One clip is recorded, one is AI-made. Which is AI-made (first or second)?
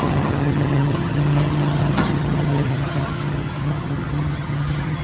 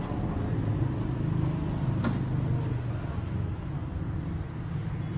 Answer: first